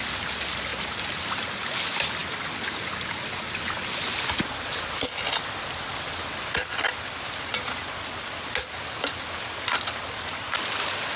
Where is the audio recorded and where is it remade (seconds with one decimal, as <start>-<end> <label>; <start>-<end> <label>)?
0.0-11.2 recorded